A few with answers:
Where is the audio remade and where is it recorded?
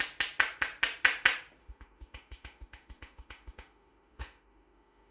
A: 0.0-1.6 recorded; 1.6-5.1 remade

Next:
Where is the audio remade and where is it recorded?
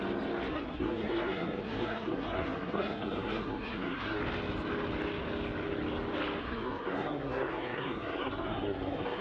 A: 0.0-0.5 recorded; 0.5-4.2 remade; 4.2-6.4 recorded; 6.4-9.2 remade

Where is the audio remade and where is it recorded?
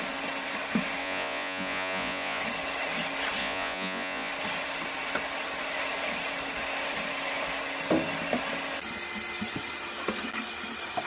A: 0.0-1.0 recorded; 1.0-2.4 remade; 2.4-3.4 recorded; 3.4-4.3 remade; 4.3-11.1 recorded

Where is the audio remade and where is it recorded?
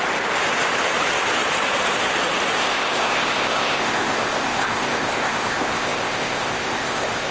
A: 0.0-2.6 recorded; 2.6-7.3 remade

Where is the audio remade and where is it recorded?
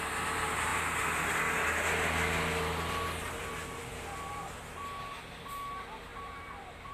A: 0.0-6.1 recorded; 6.1-6.9 remade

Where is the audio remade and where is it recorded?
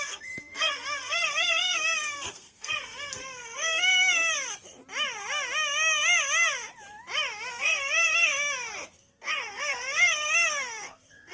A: 0.0-3.9 remade; 3.9-7.5 recorded; 7.5-8.3 remade; 8.3-8.9 recorded; 8.9-11.3 remade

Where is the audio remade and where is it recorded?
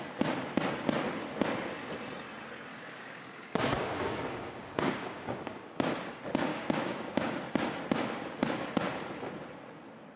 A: 0.0-2.7 recorded; 2.7-6.1 remade; 6.1-6.5 recorded; 6.5-7.4 remade; 7.4-10.2 recorded